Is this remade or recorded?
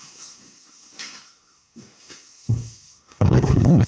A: remade